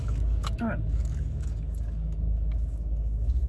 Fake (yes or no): yes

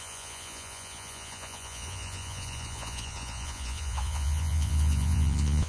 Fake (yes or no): yes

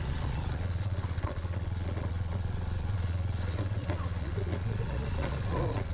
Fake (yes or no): yes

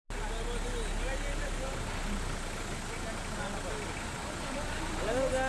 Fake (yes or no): no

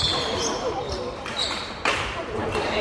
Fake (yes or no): yes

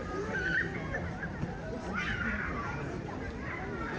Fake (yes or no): yes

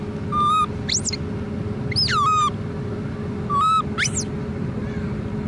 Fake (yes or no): no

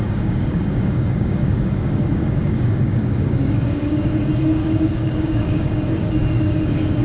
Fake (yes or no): yes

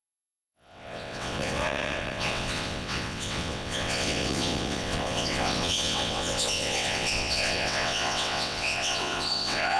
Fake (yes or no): yes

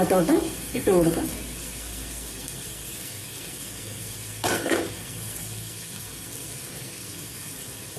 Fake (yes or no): yes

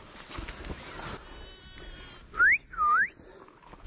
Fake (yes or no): no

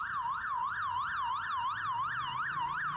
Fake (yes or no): no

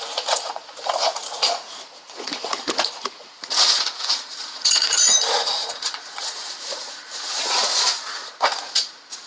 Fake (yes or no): yes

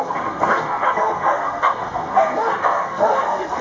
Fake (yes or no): yes